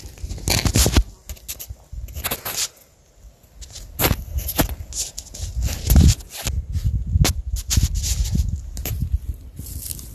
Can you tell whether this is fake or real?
real